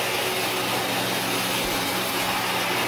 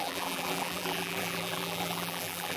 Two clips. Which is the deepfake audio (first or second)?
second